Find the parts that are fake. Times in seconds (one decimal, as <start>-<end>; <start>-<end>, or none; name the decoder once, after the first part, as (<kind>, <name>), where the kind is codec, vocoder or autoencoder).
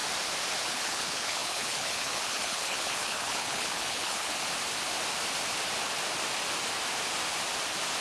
0.7-4.3 (codec, HILCodec)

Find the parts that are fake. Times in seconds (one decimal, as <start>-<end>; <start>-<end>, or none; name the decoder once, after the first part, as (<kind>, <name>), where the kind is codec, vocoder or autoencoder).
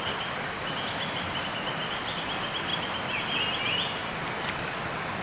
none